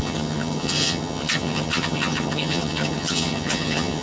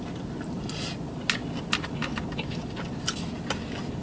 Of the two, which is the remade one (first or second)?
first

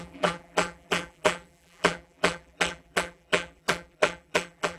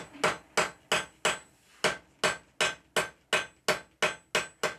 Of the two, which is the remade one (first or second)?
first